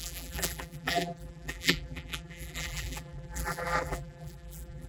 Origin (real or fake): fake